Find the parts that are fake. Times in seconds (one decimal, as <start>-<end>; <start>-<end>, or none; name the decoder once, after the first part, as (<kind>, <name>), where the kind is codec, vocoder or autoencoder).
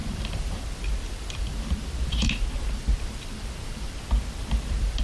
0.0-0.6 (vocoder, BigVGAN v2); 1.0-4.0; 4.4-5.0